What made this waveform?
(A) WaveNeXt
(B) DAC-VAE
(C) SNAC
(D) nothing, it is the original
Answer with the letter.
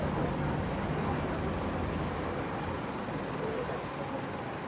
D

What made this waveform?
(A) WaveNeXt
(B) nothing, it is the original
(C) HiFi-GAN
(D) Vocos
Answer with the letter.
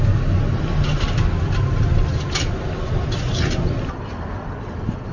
B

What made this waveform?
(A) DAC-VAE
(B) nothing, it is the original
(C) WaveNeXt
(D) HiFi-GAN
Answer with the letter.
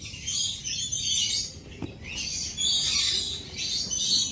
B